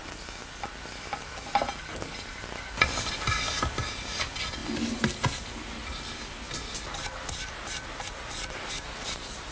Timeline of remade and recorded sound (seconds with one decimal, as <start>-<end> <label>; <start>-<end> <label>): 0.0-9.5 recorded